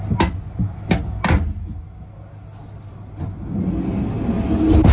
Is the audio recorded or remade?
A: recorded